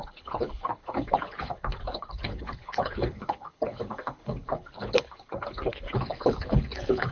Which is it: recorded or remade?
remade